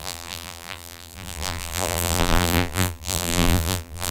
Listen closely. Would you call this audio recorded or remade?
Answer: remade